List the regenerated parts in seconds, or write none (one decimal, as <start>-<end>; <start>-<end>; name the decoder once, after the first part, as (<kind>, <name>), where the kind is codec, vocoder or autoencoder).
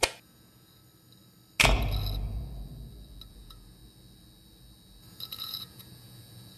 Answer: 0.0-0.8 (vocoder, Vocos); 3.3-3.8; 5.4-6.6